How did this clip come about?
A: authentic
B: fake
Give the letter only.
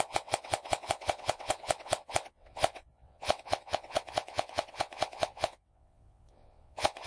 B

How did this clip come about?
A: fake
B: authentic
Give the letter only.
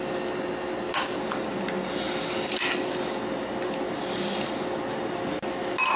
B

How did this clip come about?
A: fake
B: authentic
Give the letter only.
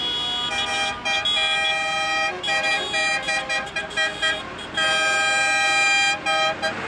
B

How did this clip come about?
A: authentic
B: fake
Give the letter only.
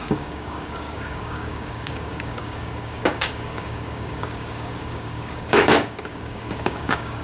B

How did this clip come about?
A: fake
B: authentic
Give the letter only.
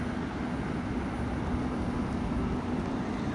B